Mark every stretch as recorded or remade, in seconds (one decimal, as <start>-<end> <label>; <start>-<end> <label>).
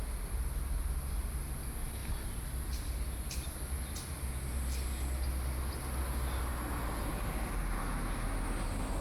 0.0-9.0 recorded